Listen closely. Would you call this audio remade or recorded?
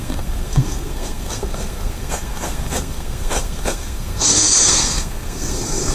remade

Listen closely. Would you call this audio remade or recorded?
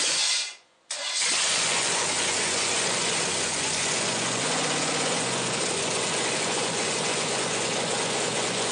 remade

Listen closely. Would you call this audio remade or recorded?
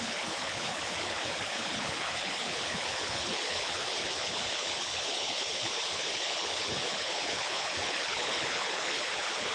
remade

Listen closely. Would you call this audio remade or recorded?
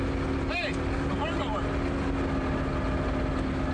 recorded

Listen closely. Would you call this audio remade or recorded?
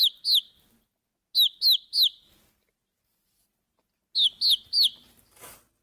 recorded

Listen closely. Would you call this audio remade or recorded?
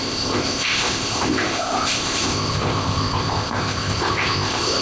remade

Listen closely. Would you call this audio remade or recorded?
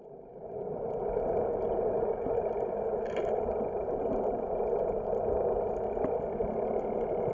recorded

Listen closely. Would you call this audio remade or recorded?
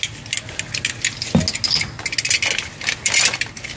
recorded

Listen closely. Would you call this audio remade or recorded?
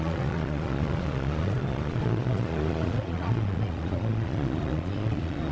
remade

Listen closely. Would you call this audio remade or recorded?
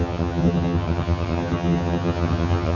remade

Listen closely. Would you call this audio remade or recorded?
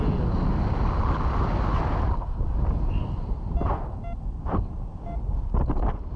recorded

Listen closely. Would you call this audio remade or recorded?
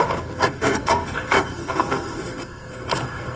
remade